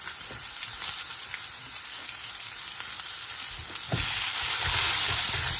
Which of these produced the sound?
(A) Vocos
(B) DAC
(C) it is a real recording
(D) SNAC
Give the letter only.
C